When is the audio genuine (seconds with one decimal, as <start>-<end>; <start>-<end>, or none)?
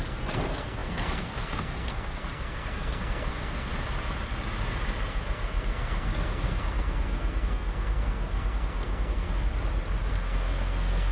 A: 3.7-5.0; 9.5-10.1